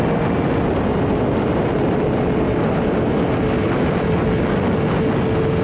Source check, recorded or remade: recorded